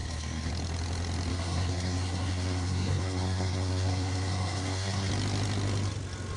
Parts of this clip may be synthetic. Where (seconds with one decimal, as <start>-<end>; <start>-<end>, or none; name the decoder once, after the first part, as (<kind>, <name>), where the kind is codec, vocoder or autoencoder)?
0.0-0.5 (codec, SNAC); 1.3-5.1